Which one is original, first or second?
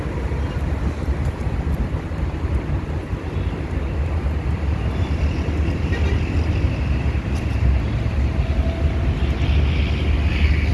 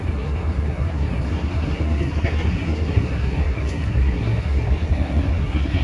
first